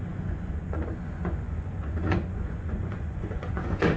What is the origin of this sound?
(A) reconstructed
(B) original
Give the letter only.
A